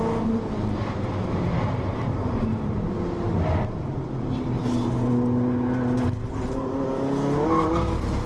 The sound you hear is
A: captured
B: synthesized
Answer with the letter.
A